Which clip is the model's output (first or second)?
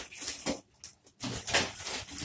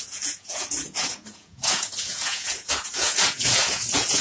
second